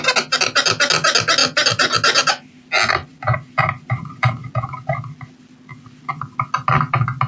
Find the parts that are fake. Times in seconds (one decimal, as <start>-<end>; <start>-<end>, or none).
3.1-4.3